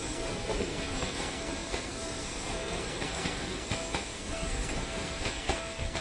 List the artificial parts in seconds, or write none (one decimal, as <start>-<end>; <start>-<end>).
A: 0.0-6.0